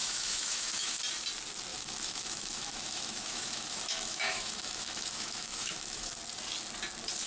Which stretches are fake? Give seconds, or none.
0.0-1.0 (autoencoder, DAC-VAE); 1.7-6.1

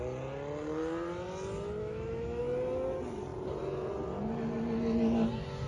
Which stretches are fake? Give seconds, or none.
1.8-2.4 (autoencoder, DAC-VAE)